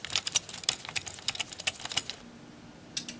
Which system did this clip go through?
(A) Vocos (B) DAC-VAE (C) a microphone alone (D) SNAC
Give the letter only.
C